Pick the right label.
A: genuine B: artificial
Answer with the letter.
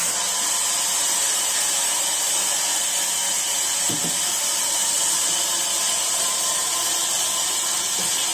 A